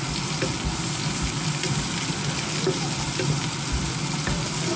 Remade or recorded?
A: recorded